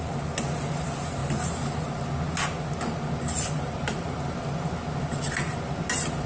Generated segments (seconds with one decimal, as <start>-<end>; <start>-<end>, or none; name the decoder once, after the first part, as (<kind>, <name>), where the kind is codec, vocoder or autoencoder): none